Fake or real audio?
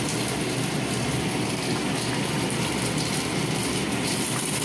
real